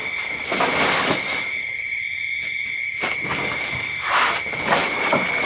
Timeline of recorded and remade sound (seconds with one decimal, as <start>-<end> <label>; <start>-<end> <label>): 0.0-3.3 remade; 3.3-4.8 recorded; 4.8-5.5 remade